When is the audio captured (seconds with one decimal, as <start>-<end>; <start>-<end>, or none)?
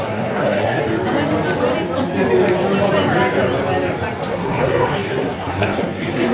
0.8-4.2